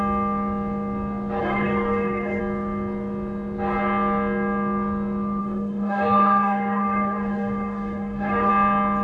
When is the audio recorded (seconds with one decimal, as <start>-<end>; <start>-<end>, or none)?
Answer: 0.0-1.4; 2.4-5.4; 8.5-9.0